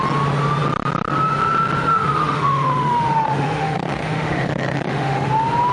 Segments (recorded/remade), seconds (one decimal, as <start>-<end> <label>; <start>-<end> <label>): 0.0-1.9 recorded; 1.9-5.3 remade; 5.3-5.7 recorded